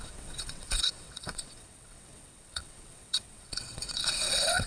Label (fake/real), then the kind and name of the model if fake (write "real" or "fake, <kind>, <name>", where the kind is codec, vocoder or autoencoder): fake, vocoder, WaveNeXt